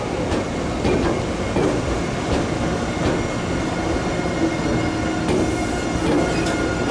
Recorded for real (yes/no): yes